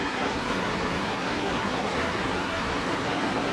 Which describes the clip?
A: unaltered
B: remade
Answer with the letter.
B